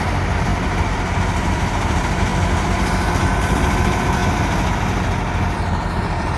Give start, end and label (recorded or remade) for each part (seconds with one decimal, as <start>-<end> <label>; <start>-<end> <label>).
0.0-2.3 remade; 2.3-3.2 recorded; 3.2-4.2 remade; 4.2-6.0 recorded; 6.0-6.4 remade